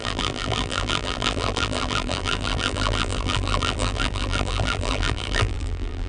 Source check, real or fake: fake